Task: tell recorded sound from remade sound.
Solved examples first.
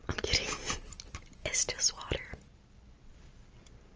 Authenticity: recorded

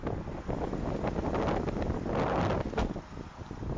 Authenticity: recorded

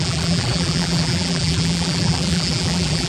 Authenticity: remade